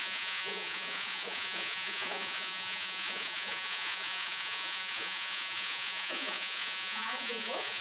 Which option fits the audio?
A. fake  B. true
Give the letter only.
A